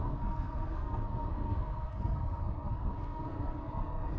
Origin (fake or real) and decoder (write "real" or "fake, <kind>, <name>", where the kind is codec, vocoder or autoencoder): fake, codec, SNAC